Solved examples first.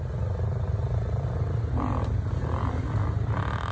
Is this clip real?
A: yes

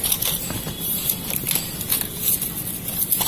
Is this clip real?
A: yes